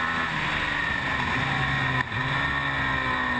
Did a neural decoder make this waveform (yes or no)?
no